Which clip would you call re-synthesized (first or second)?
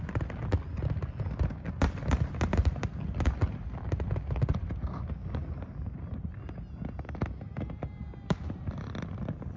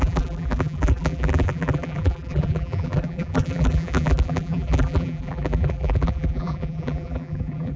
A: second